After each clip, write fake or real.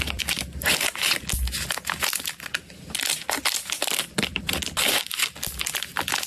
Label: real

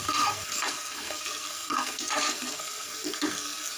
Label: fake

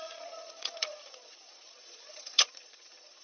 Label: fake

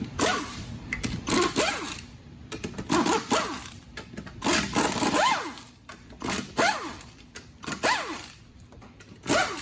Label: fake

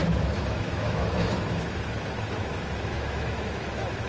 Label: fake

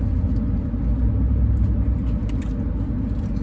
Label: real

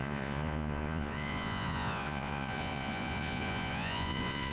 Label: fake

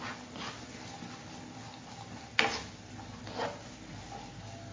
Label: real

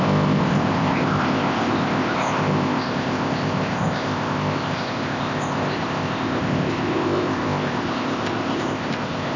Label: fake